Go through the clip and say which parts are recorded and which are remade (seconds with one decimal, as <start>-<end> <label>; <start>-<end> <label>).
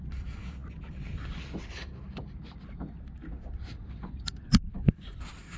0.0-5.6 recorded